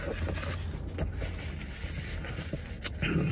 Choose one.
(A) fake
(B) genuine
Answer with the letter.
B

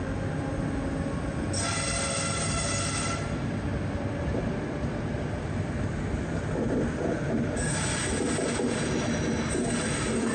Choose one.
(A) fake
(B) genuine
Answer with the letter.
B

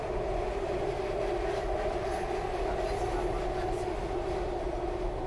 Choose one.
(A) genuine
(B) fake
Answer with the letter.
A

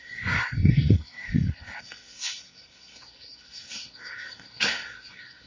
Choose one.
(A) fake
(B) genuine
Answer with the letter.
A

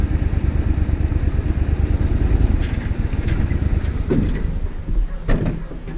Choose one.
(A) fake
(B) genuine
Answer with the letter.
B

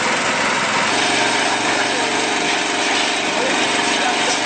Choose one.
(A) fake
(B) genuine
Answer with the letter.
B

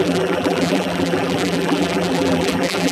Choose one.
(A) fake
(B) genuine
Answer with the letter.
A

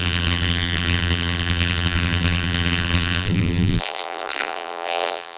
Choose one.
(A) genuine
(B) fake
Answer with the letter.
B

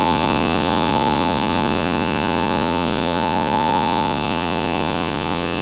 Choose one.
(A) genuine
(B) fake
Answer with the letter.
B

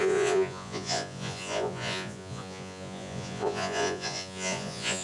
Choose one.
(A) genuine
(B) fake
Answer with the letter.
B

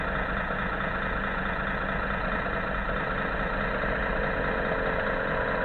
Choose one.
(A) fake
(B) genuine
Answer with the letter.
B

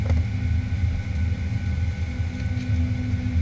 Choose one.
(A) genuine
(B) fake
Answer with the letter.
A